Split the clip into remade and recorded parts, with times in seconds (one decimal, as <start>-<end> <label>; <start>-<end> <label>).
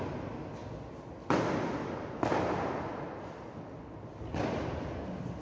0.0-5.4 recorded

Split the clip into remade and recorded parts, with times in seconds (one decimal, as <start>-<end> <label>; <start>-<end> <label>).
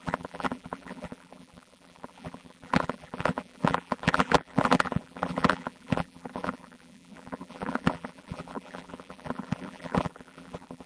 0.0-10.9 remade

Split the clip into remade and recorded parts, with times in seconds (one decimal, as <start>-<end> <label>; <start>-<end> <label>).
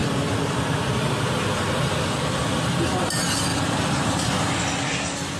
0.0-3.0 remade; 3.0-3.5 recorded; 3.5-4.6 remade; 4.6-5.4 recorded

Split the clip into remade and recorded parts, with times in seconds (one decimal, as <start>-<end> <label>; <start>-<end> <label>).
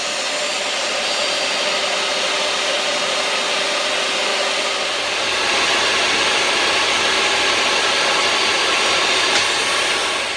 0.0-4.3 recorded; 4.3-6.1 remade; 6.1-10.4 recorded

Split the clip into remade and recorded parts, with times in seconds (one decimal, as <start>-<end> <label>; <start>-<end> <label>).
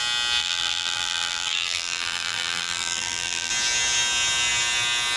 0.0-0.4 recorded; 0.4-3.5 remade; 3.5-5.2 recorded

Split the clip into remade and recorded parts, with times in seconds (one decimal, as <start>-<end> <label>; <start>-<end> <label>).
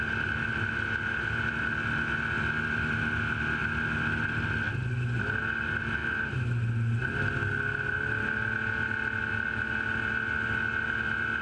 0.0-11.4 recorded